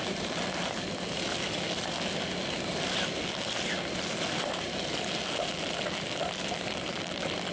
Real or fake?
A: real